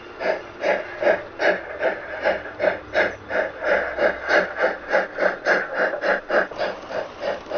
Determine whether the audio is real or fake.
real